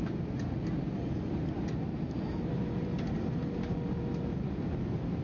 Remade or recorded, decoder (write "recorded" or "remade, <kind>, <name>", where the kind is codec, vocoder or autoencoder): recorded